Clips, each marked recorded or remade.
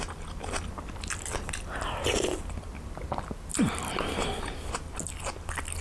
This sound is recorded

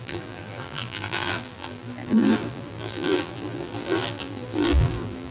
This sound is remade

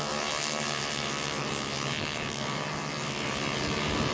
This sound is recorded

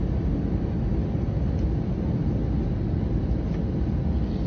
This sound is recorded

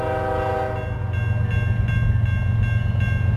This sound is recorded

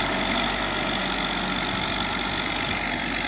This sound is recorded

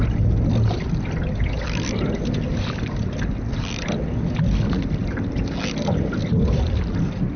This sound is recorded